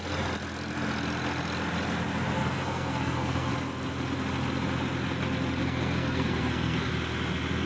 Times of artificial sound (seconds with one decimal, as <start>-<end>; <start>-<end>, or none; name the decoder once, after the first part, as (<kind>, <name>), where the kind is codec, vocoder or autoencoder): 2.4-3.5 (codec, SNAC); 5.6-6.9